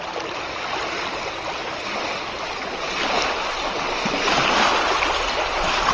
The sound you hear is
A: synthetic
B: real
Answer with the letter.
B